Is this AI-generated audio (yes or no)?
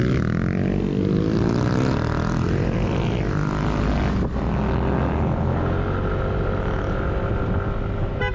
no